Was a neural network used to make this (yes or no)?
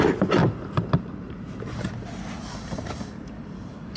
no